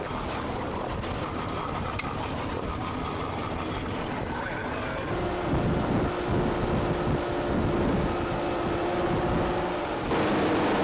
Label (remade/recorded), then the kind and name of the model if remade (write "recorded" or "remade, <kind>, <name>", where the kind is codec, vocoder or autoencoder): recorded